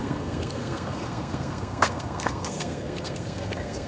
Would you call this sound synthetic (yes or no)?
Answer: yes